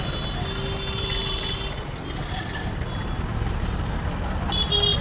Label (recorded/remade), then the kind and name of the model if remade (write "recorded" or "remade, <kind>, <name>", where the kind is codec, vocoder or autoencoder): recorded